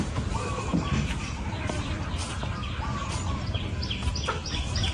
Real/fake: fake